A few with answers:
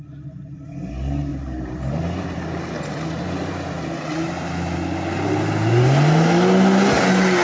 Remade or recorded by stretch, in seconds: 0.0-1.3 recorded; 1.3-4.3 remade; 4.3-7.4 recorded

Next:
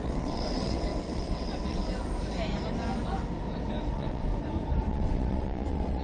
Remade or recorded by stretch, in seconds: 0.0-1.8 remade; 1.8-3.9 recorded; 3.9-4.3 remade; 4.3-4.9 recorded; 4.9-6.0 remade

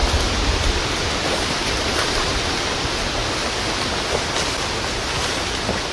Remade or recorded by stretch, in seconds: 0.0-3.2 remade; 3.2-5.9 recorded

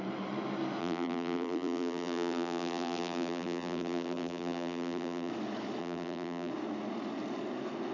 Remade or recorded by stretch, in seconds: 0.0-0.8 recorded; 0.8-5.3 remade; 5.3-5.8 recorded; 5.8-6.5 remade; 6.5-7.9 recorded

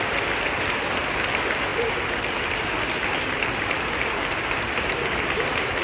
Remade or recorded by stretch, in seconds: 0.0-5.8 recorded

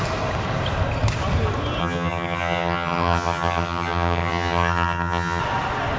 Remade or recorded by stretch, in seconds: 0.0-1.8 recorded; 1.8-5.4 remade; 5.4-6.0 recorded

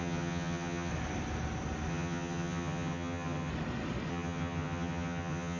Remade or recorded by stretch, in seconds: 0.0-0.9 remade; 0.9-1.9 recorded; 1.9-3.5 remade; 3.5-4.1 recorded; 4.1-5.6 remade

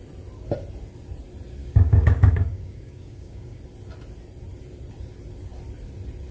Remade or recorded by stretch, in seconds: 0.0-1.6 recorded; 1.6-3.6 remade; 3.6-6.3 recorded